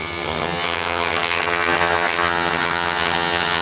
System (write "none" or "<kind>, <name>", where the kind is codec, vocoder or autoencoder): vocoder, HiFi-GAN